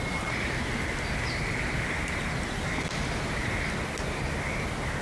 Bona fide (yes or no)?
yes